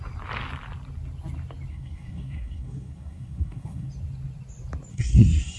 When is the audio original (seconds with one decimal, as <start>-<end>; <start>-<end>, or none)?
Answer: 0.0-1.7; 3.9-4.9